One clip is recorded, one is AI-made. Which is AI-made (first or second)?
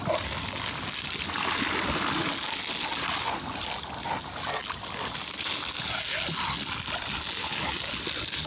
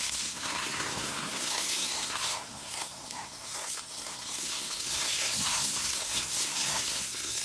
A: second